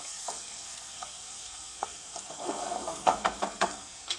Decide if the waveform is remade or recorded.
remade